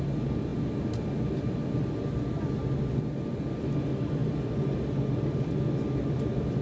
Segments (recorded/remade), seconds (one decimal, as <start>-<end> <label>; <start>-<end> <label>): 0.0-6.6 recorded